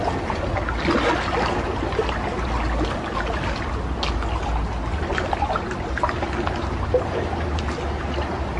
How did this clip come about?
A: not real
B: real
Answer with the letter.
B